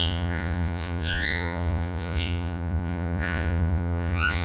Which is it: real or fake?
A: fake